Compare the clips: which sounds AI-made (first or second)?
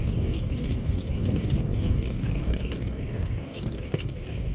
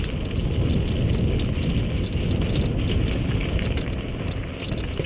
first